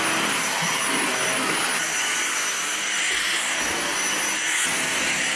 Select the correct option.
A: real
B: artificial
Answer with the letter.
A